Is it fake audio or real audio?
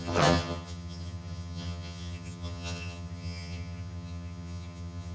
fake